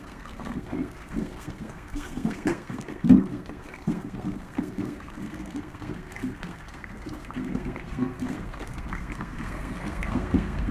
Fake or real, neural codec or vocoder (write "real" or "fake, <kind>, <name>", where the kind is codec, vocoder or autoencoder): fake, codec, SNAC